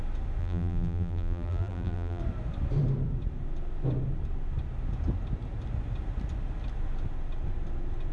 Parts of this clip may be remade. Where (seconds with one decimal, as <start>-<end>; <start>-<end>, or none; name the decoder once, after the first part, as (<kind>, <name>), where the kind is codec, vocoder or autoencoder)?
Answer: 0.4-2.2 (vocoder, BigVGAN v2)